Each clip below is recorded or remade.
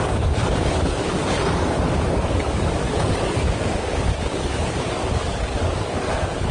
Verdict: remade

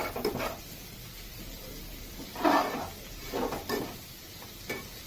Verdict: remade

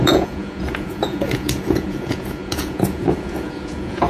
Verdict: remade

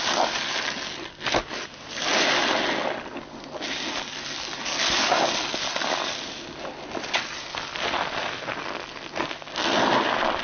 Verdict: recorded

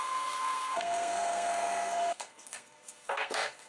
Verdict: remade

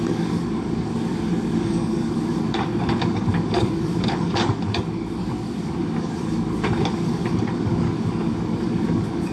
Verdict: remade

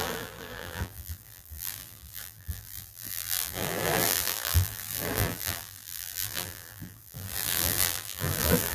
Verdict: remade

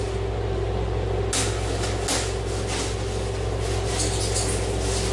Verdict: recorded